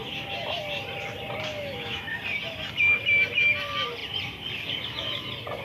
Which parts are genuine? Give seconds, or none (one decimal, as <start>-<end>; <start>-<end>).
0.0-1.5; 2.1-5.6